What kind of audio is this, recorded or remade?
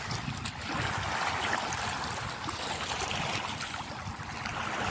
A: recorded